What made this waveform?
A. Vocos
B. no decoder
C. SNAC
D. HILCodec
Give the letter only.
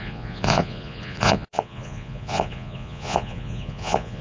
A